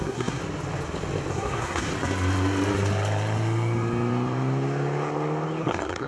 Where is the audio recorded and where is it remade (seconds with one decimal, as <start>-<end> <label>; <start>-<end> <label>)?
0.0-0.4 remade; 0.4-1.3 recorded; 1.3-1.9 remade; 1.9-5.6 recorded; 5.6-6.1 remade